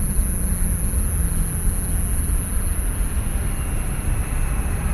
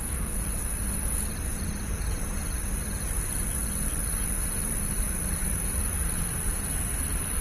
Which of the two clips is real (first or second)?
first